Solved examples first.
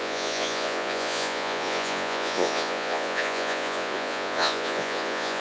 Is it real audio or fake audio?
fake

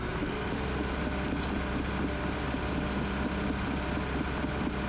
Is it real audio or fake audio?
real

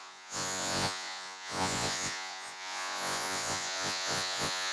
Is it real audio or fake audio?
fake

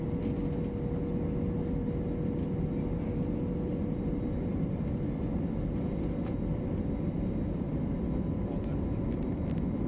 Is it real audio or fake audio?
real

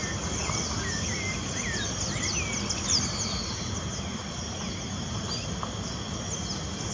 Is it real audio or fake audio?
real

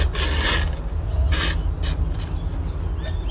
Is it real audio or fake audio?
real